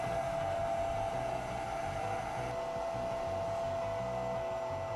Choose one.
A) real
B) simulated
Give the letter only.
A